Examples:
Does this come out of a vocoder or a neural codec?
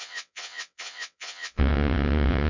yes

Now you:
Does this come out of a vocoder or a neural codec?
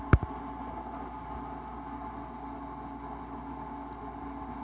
no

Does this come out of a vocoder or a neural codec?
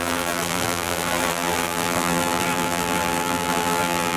yes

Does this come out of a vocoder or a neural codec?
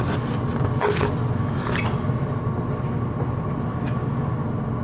no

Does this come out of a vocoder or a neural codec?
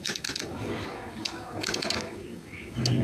yes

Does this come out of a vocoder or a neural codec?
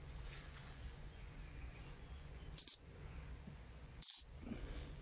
yes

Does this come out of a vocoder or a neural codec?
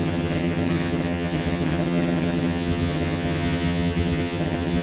yes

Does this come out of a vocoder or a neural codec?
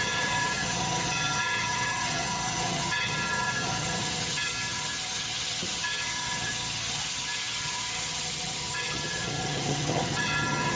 yes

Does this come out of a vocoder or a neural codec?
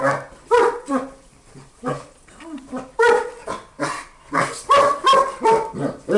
yes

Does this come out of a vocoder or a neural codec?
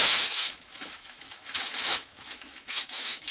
yes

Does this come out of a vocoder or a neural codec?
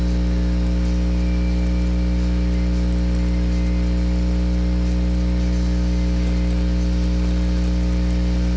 no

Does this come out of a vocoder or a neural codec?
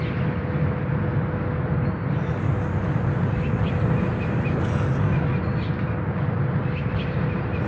no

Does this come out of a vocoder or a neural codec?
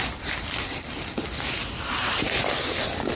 yes